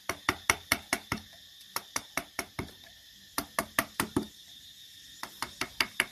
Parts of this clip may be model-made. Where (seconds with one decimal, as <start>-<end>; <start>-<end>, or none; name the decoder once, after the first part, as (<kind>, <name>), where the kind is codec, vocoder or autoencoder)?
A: none